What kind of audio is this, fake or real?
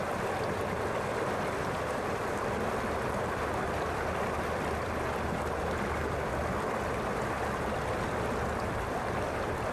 real